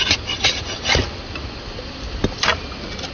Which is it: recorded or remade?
recorded